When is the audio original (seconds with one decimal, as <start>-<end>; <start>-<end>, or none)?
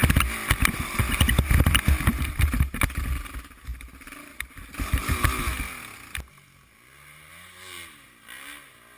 0.0-9.0